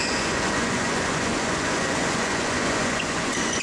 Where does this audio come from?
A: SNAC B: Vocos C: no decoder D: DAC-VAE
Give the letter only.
B